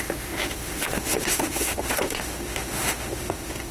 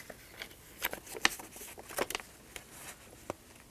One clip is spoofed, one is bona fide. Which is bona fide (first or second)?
second